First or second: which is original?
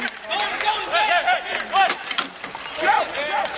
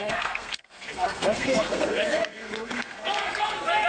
first